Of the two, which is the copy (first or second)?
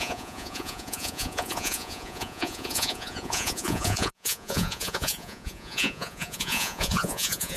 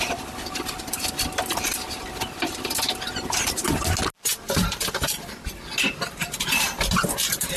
first